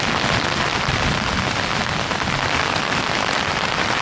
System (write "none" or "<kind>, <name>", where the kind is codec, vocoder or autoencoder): none